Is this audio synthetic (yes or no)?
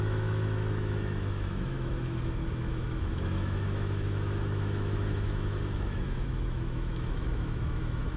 yes